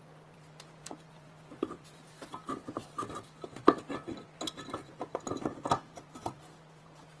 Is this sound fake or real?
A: real